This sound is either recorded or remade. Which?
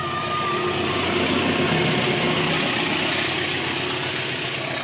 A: recorded